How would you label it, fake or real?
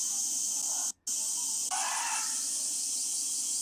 real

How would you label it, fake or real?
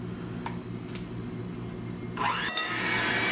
real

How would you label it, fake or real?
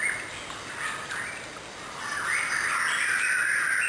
real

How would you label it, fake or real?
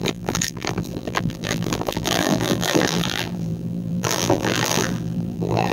fake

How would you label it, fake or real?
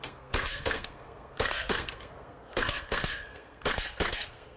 fake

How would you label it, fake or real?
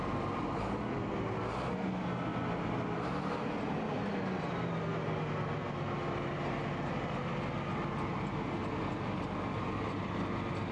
real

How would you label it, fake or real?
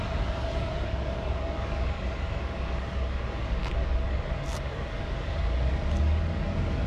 fake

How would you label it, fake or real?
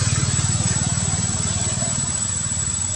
real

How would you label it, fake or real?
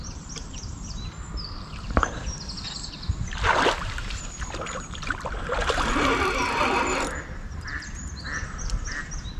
fake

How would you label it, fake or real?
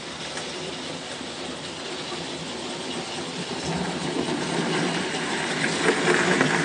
real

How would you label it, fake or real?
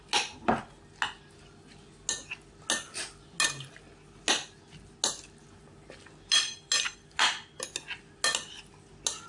real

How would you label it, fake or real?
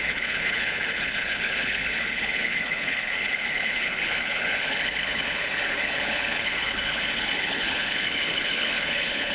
fake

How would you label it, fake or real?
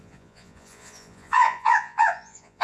fake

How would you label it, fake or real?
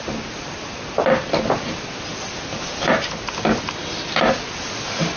real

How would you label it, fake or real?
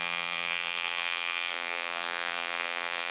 fake